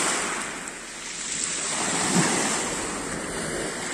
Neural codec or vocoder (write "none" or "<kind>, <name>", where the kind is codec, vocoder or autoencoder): none